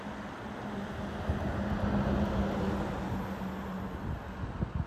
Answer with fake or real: real